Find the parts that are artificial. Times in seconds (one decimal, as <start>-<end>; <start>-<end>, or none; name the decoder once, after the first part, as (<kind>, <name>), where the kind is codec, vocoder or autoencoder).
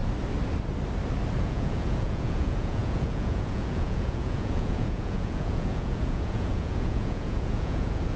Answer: 1.4-8.2 (vocoder, Vocos)